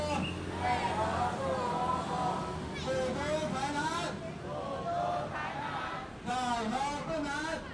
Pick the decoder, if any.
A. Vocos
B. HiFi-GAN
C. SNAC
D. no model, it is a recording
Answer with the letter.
D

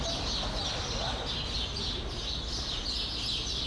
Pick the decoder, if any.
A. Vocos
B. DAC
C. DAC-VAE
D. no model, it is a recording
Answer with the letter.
D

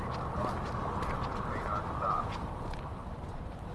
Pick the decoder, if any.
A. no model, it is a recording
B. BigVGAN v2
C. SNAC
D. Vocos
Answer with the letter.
A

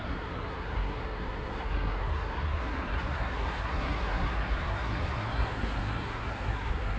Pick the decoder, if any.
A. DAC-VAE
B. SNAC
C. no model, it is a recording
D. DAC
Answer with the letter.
B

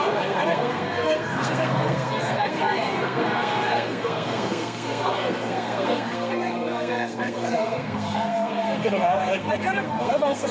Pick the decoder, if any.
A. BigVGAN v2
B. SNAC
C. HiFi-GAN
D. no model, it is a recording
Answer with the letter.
B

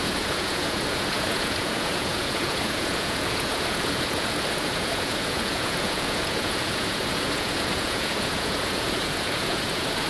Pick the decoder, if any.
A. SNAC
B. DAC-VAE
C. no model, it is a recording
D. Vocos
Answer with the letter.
D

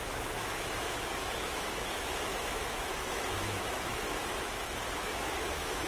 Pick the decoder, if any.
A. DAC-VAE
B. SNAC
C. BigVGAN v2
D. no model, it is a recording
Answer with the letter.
A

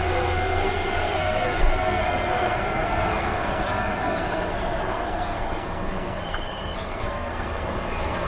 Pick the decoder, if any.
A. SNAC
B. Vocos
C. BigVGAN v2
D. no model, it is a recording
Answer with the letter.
A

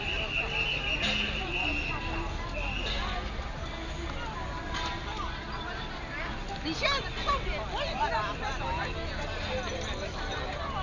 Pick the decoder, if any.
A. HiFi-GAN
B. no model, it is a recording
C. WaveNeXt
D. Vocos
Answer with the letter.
B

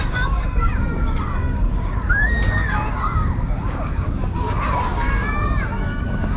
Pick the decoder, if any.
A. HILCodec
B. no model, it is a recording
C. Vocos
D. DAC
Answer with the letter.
D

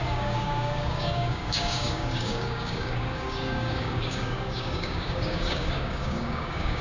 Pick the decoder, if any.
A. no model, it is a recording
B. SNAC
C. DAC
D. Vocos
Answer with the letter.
C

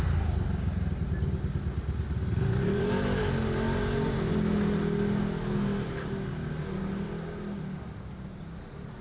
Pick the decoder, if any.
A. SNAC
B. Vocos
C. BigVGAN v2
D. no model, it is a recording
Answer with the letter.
D